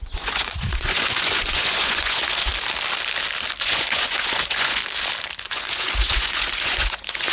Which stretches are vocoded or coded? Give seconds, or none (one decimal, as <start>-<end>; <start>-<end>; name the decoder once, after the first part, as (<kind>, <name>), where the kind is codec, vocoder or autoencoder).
0.0-2.5 (vocoder, Vocos); 3.6-4.8; 5.4-7.3

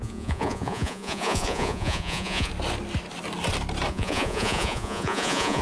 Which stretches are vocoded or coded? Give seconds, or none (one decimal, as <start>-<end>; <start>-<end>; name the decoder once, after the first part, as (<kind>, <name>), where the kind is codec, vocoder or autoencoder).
0.0-2.5 (vocoder, Vocos); 3.9-5.6

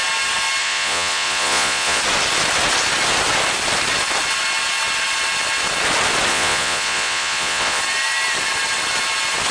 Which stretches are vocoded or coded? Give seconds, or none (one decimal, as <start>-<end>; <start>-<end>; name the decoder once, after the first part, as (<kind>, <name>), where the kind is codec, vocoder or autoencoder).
0.6-2.0 (vocoder, Vocos); 6.3-7.8

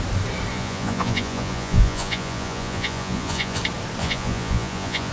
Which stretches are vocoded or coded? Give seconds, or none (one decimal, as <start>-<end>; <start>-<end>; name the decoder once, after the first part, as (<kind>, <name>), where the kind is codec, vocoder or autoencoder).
0.5-3.6 (vocoder, Vocos); 4.0-5.1

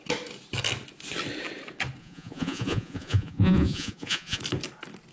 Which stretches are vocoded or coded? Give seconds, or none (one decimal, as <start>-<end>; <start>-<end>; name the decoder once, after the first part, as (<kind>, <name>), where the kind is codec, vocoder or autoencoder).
2.0-4.4 (vocoder, Vocos)

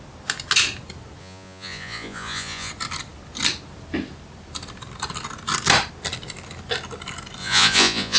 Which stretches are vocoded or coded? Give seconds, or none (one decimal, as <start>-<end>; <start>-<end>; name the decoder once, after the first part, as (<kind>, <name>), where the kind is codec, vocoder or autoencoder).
1.2-2.7 (vocoder, Vocos); 7.4-8.2

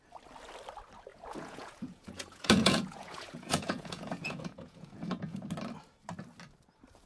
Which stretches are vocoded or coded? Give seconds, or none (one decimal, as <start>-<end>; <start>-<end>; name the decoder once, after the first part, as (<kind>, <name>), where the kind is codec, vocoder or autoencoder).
1.1-5.4 (vocoder, Vocos)